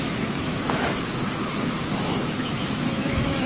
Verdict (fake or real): fake